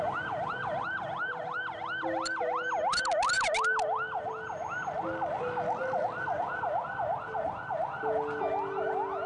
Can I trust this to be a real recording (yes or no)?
yes